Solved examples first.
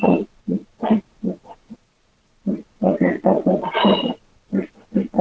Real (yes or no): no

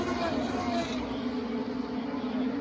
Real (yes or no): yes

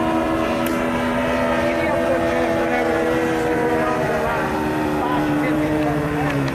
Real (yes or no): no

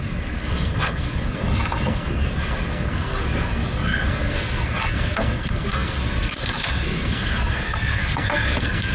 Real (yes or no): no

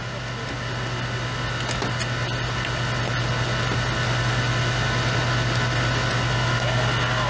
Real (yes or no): yes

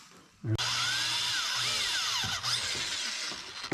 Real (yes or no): yes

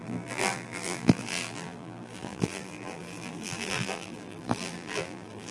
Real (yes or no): no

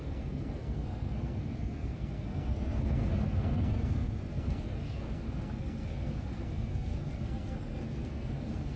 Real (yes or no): no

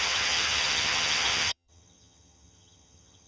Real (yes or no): no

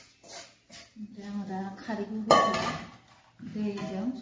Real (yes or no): yes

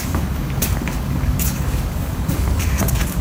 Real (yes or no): no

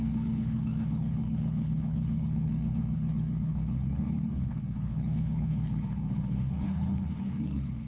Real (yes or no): no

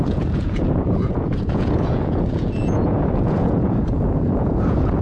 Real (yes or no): no